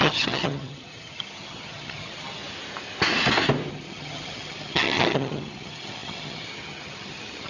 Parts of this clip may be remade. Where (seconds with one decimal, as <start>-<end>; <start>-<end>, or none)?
0.0-2.4; 3.7-7.5